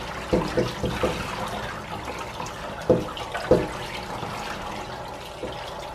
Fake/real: real